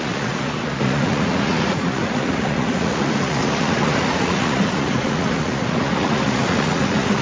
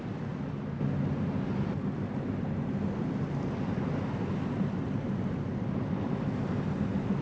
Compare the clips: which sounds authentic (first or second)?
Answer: second